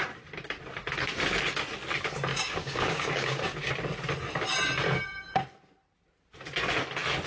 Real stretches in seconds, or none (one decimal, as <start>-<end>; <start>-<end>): 0.0-2.3; 3.7-7.3

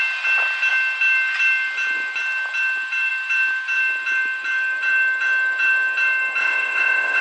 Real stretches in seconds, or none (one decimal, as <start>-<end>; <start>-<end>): 0.0-6.4

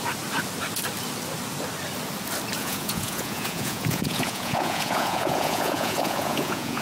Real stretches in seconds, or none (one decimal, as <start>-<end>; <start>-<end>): 0.0-2.6

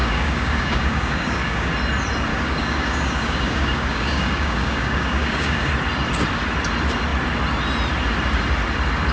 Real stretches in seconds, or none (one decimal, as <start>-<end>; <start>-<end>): 1.7-2.3; 5.7-9.1

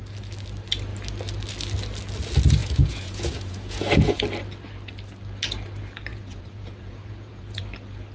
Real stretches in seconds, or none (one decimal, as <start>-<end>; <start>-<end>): 0.0-2.6; 4.2-6.1; 7.6-8.1

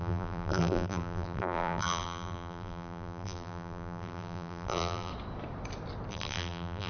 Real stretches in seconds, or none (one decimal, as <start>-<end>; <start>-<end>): 5.1-6.1